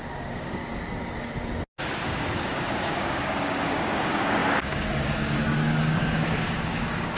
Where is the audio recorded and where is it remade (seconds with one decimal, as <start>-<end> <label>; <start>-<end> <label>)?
0.0-0.6 remade; 0.6-2.1 recorded; 2.1-7.2 remade